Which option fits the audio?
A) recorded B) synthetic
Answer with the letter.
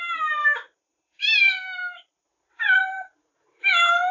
B